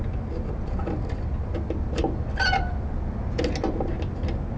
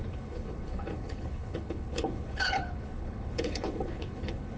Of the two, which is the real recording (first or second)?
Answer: first